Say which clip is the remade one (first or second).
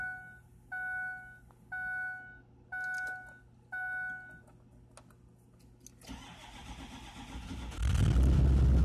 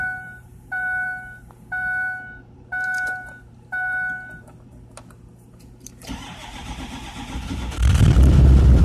second